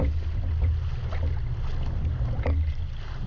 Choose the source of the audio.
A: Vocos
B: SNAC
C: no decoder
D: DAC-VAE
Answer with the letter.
C